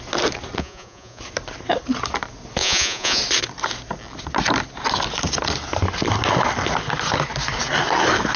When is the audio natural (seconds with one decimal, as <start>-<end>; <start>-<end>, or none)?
0.0-0.6; 1.2-2.6; 3.2-8.4